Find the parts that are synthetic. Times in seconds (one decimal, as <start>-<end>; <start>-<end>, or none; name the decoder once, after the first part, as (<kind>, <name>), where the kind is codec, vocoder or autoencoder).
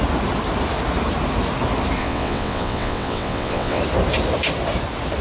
2.0-3.8 (vocoder, WaveNeXt)